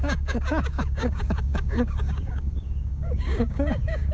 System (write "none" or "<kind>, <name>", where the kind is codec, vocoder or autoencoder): codec, DAC